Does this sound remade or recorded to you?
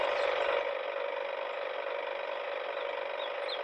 recorded